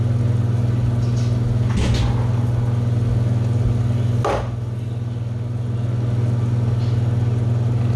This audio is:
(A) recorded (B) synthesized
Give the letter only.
A